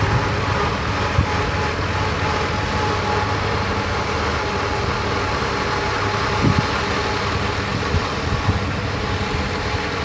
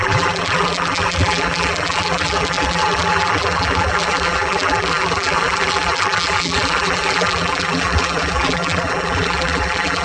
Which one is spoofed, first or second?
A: second